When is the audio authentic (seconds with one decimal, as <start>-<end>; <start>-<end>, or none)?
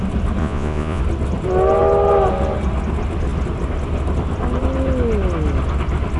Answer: 0.0-0.4; 1.0-6.2